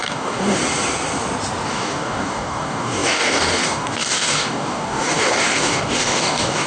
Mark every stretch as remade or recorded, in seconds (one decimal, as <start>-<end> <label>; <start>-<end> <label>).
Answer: 0.0-0.6 remade; 0.6-1.7 recorded; 1.7-6.7 remade